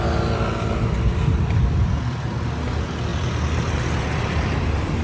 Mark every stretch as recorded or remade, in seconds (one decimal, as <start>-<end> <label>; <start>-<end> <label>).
0.0-5.0 recorded